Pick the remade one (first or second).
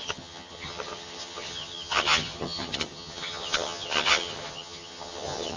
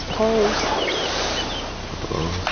first